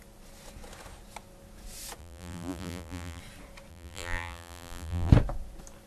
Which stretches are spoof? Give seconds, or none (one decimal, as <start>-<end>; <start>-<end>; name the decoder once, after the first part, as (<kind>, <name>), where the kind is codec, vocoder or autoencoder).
2.0-3.2 (vocoder, BigVGAN v2); 3.7-5.1